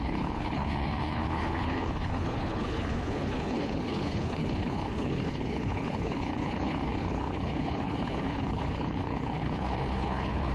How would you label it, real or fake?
fake